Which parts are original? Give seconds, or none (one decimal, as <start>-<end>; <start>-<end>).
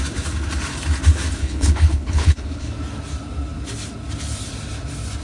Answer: 0.0-1.4; 2.7-5.2